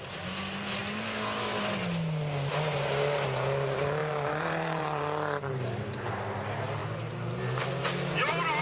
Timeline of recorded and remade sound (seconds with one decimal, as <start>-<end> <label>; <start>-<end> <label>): 0.0-4.0 recorded; 4.0-6.1 remade; 6.1-8.6 recorded